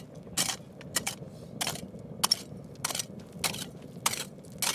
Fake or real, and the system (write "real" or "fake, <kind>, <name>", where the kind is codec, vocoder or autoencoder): real